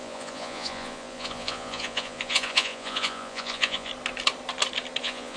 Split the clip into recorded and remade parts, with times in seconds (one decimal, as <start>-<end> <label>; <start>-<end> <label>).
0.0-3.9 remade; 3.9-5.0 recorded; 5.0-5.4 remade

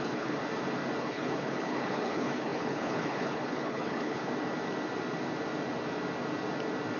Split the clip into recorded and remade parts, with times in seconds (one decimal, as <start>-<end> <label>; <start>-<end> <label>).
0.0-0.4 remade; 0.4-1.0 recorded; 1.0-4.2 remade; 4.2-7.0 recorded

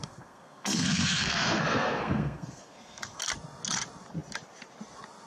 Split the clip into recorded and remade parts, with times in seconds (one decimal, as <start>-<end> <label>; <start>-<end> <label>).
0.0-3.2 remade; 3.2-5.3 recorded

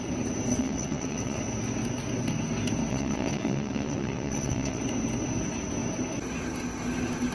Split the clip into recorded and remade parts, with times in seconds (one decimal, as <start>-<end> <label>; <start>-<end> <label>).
0.0-0.5 recorded; 0.5-1.4 remade; 1.4-2.9 recorded; 2.9-4.8 remade; 4.8-7.3 recorded